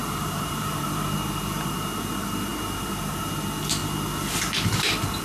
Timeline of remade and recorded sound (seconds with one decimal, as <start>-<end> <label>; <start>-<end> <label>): 0.0-1.7 remade; 1.7-5.2 recorded